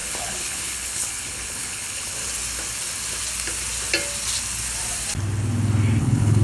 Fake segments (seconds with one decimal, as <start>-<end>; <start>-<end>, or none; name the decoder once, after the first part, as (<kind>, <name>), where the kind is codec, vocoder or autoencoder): 0.0-2.2 (codec, HILCodec); 6.0-6.4